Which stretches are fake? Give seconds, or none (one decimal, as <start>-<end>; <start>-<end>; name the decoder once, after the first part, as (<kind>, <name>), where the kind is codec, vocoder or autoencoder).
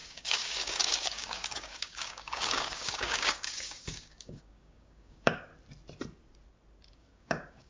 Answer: 0.0-5.5 (codec, DAC); 6.9-7.7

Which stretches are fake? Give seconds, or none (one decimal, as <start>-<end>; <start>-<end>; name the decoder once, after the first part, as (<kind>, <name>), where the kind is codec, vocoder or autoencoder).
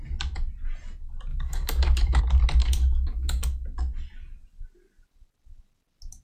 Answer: 1.3-2.2 (codec, DAC); 2.6-3.6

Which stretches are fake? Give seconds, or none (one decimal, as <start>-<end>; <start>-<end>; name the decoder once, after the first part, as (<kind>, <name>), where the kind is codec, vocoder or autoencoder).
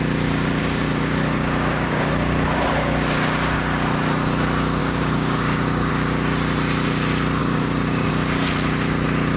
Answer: 0.6-2.1 (codec, DAC); 4.8-5.9; 7.4-8.1